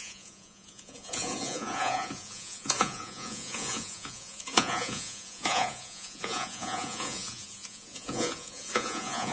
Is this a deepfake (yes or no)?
yes